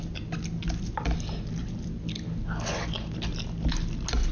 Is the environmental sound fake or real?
real